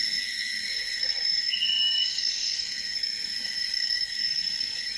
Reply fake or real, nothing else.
fake